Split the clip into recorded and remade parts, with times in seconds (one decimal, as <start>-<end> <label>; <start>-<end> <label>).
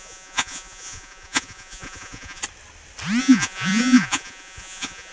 0.0-2.4 remade; 2.4-3.2 recorded; 3.2-5.1 remade